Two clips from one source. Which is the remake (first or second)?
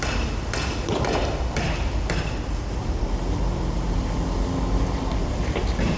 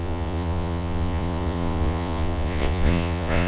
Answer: second